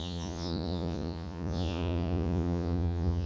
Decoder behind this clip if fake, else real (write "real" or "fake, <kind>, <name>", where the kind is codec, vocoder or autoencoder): fake, vocoder, Vocos